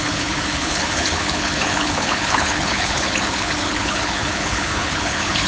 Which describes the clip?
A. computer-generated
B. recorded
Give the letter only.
A